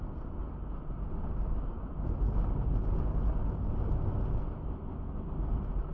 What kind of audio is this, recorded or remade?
recorded